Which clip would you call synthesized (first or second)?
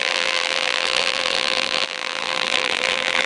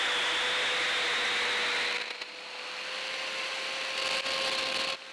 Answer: first